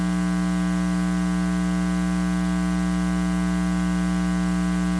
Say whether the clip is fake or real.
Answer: real